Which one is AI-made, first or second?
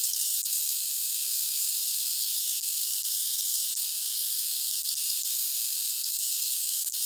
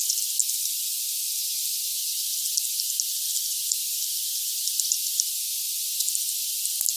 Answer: first